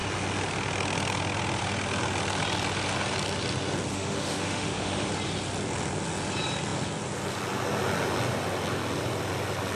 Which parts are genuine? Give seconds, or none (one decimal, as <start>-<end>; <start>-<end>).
0.0-3.9; 5.1-9.8